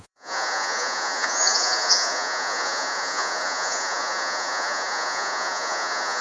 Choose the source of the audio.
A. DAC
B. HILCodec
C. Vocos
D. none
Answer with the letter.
C